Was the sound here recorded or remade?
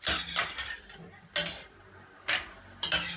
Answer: recorded